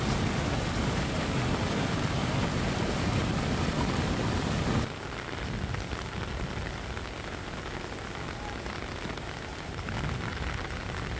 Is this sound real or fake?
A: real